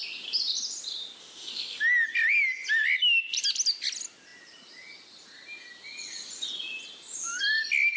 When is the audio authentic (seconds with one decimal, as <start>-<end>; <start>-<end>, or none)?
0.0-1.2; 1.8-8.0